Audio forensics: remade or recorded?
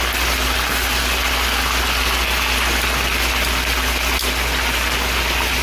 recorded